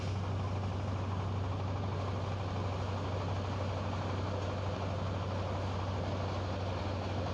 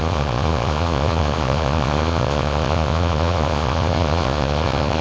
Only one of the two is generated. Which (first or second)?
second